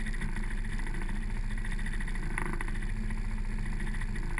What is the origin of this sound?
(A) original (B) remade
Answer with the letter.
A